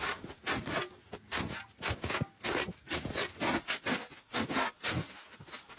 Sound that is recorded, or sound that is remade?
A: recorded